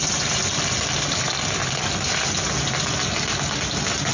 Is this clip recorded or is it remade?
recorded